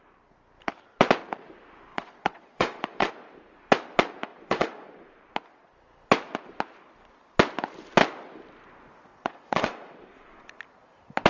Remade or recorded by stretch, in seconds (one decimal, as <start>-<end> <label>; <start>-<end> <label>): 0.0-1.9 recorded; 1.9-3.1 remade; 3.1-4.3 recorded; 4.3-5.3 remade; 5.3-9.1 recorded; 9.1-10.5 remade; 10.5-11.3 recorded